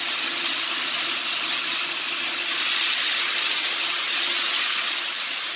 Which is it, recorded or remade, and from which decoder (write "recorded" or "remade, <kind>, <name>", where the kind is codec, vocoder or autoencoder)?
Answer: recorded